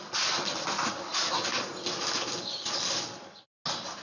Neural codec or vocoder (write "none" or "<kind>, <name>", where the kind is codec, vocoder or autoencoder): none